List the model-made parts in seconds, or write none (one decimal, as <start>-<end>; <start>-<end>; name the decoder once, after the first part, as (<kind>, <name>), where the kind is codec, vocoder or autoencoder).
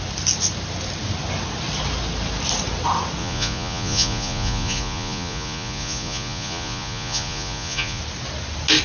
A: 3.2-8.0 (vocoder, Vocos)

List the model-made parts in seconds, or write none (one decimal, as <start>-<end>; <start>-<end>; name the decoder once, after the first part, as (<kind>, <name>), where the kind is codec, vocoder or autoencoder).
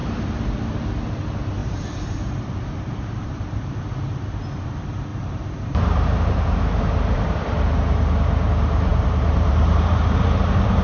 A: 1.6-3.8 (vocoder, BigVGAN v2); 5.1-7.4; 8.9-9.9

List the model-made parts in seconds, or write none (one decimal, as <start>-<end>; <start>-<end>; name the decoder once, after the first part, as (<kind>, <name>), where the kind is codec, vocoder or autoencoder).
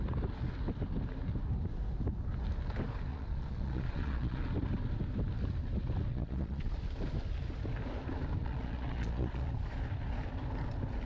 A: 3.1-4.4 (vocoder, Vocos); 6.1-6.8; 8.4-9.5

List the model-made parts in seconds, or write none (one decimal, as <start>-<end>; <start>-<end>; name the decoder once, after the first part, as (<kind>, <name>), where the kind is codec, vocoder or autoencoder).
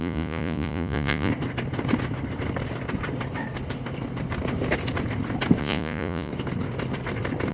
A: 0.0-1.3 (vocoder, Vocos); 5.6-6.3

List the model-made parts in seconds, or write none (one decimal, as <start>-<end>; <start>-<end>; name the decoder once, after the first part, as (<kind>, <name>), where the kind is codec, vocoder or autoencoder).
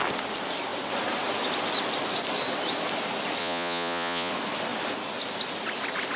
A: 3.4-4.3 (vocoder, Vocos)